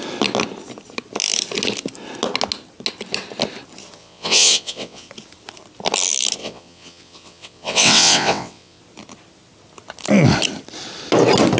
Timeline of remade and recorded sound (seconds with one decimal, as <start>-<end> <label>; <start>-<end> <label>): 0.0-4.0 recorded; 4.0-5.1 remade; 5.1-6.4 recorded; 6.4-8.8 remade; 8.8-11.6 recorded